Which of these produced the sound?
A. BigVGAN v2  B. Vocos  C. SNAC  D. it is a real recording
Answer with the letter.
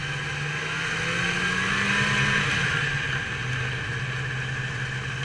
D